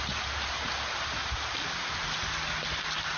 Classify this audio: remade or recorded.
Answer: recorded